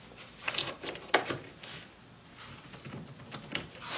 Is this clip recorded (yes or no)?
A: yes